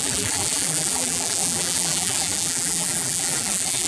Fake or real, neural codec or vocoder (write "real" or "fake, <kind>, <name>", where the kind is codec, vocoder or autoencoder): fake, vocoder, BigVGAN v2